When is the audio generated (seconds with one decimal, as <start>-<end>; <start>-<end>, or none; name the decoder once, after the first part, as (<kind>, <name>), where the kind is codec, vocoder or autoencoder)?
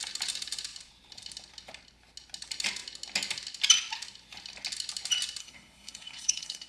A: 5.4-6.7 (codec, SNAC)